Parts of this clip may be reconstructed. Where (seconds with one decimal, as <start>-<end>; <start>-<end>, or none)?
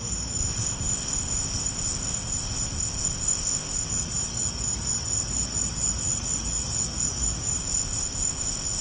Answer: 0.4-3.9; 7.6-8.8